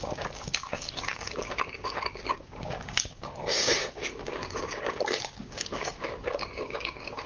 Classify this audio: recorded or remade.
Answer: remade